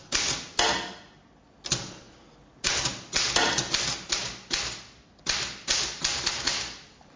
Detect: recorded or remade recorded